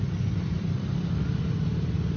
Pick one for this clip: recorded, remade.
recorded